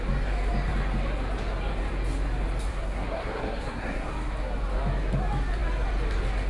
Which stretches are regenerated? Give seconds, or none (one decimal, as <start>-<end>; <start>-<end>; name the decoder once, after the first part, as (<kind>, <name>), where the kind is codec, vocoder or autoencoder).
2.7-4.1 (codec, SNAC)

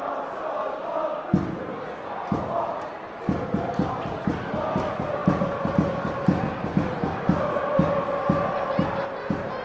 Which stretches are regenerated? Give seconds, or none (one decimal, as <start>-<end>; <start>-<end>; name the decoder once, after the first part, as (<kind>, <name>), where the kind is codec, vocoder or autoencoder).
none

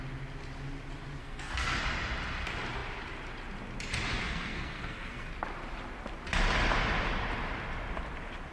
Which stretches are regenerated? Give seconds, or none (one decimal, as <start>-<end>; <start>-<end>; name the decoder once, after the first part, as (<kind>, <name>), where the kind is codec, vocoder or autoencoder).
1.2-1.8 (codec, SNAC); 4.2-5.3

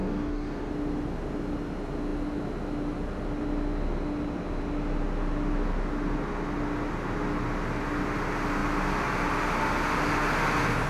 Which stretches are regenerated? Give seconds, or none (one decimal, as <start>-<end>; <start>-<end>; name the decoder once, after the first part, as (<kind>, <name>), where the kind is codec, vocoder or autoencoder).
0.0-0.7 (codec, DAC)